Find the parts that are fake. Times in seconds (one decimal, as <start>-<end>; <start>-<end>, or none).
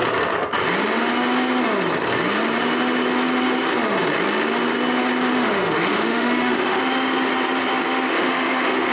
5.3-6.8; 8.1-8.9